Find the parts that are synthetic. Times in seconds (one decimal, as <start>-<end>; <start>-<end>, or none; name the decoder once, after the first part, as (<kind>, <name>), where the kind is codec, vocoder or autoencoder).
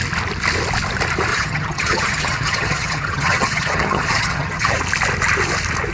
1.3-4.8 (vocoder, HiFi-GAN)